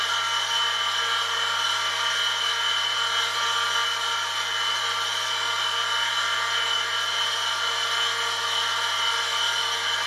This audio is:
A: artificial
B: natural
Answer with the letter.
B